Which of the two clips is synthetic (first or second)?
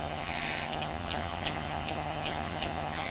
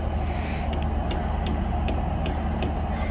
first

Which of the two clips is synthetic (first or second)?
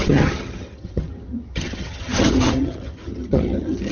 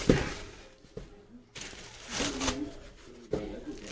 first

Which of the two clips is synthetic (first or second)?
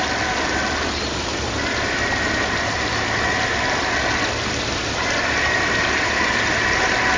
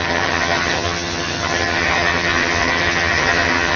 second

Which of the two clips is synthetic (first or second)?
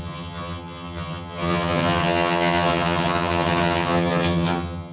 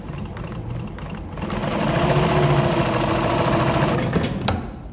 first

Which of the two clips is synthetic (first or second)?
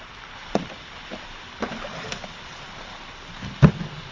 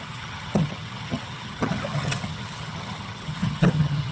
second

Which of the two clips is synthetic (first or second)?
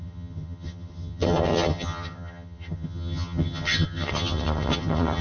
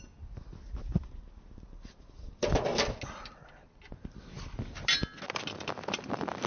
first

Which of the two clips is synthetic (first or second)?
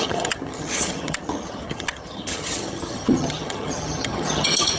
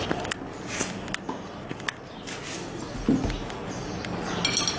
first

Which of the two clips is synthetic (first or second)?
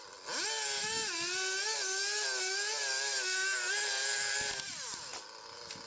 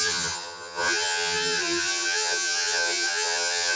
second